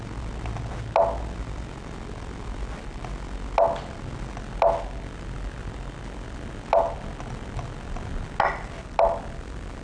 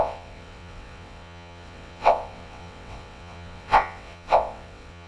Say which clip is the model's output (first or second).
second